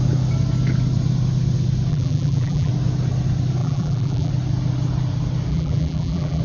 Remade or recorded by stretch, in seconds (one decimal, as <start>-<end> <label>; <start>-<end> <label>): 0.0-1.9 recorded; 1.9-2.7 remade; 2.7-3.6 recorded; 3.6-4.3 remade; 4.3-5.5 recorded; 5.5-6.4 remade